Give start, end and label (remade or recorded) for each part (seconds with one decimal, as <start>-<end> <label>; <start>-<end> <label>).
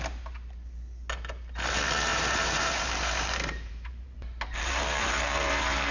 0.0-2.1 recorded; 2.1-5.9 remade